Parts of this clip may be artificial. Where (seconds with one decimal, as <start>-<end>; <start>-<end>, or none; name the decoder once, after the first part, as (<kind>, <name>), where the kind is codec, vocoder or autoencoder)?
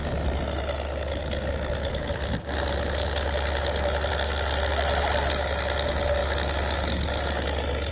none